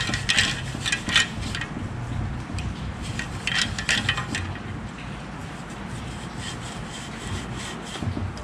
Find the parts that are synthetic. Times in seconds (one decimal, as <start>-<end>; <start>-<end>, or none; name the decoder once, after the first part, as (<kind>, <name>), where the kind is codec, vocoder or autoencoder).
2.3-3.8 (vocoder, BigVGAN v2); 5.4-6.0